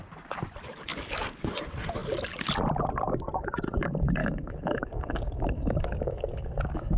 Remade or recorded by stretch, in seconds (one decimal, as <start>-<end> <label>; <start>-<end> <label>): 0.0-0.9 recorded; 0.9-1.5 remade; 1.5-4.2 recorded; 4.2-7.0 remade